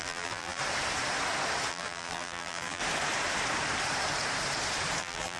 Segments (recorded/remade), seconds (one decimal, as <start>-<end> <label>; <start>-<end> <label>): 0.0-0.6 remade; 0.6-1.7 recorded; 1.7-2.8 remade; 2.8-5.0 recorded; 5.0-5.4 remade